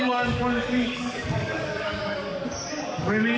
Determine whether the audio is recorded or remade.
remade